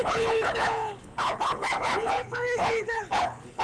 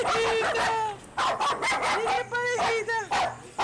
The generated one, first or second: first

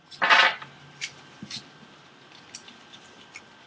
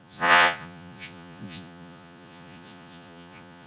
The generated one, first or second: second